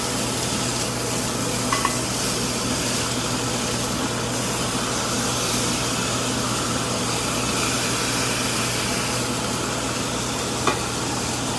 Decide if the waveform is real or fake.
real